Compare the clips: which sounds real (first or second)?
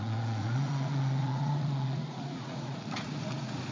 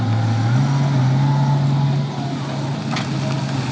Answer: second